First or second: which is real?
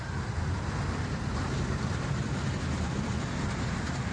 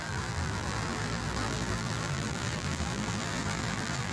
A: first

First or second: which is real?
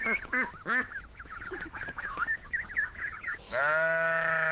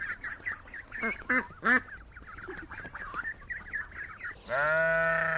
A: second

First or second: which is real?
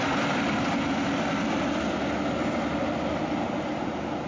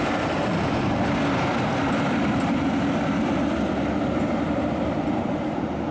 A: first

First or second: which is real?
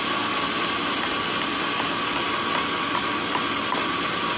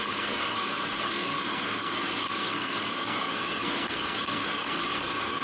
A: first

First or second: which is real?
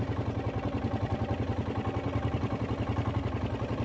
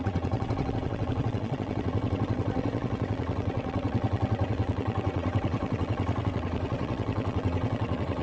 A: first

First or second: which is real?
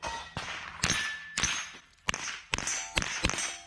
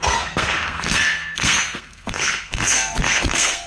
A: first